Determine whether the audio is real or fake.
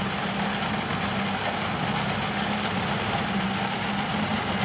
real